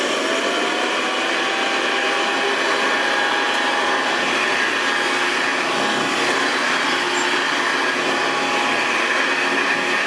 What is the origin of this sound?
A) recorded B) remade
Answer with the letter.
A